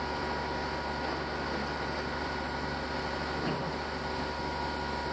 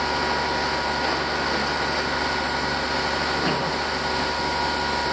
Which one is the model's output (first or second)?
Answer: first